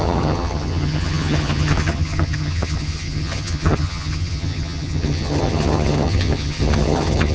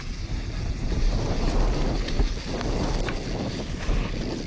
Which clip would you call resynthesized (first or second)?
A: first